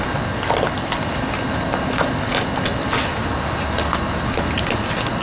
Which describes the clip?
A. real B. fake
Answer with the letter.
A